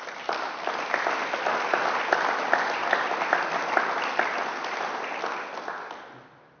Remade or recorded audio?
recorded